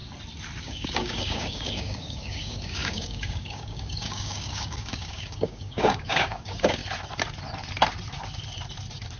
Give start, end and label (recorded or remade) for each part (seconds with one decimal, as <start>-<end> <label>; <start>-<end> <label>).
0.0-0.6 recorded; 0.6-6.8 remade; 6.8-9.2 recorded